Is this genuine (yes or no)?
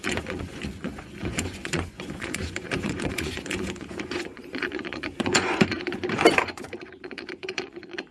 no